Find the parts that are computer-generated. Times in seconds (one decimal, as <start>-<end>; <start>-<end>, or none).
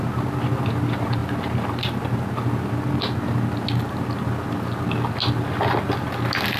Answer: none